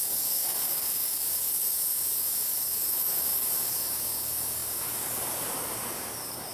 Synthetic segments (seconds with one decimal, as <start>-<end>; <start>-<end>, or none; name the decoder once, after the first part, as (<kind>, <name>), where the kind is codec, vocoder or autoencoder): 0.0-6.5 (codec, DAC)